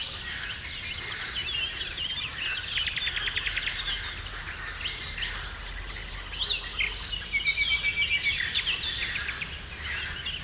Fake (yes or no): no